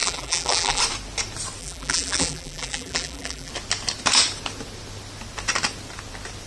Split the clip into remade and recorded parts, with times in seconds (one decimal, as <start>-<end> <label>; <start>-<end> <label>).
0.0-0.8 remade; 0.8-1.6 recorded; 1.6-3.5 remade; 3.5-6.5 recorded